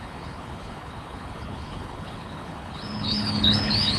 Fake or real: fake